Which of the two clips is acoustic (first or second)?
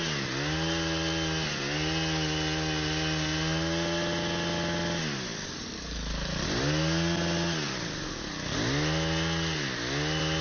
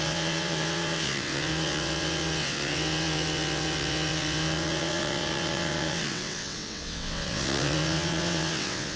first